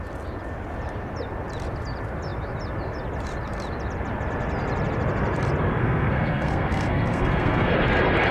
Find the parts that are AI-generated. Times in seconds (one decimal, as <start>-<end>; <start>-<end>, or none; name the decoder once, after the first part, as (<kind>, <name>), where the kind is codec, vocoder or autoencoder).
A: 5.8-7.7 (codec, SNAC)